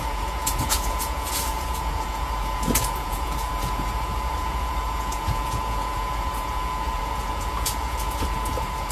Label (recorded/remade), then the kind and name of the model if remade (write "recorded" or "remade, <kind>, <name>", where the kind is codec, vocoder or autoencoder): remade, vocoder, Vocos